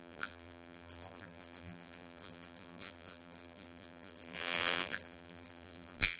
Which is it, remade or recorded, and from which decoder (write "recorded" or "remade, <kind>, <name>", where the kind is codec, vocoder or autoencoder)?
remade, vocoder, BigVGAN v2